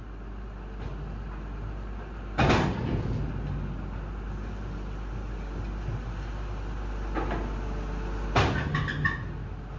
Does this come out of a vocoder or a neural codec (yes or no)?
no